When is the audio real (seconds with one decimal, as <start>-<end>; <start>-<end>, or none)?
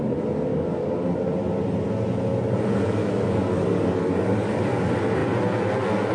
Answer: 0.0-0.5; 1.3-3.0; 4.6-6.1